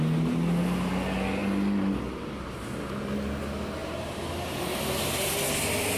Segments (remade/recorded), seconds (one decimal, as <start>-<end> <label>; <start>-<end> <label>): 0.0-6.0 recorded